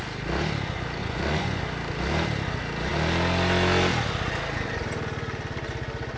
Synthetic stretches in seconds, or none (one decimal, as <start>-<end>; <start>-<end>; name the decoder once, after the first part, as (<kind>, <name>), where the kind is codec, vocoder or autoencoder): 1.0-1.6 (vocoder, Vocos)